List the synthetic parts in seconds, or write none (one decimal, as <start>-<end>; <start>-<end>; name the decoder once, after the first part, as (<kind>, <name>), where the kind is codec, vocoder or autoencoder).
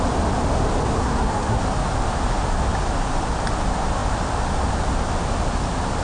1.0-1.6 (codec, SNAC)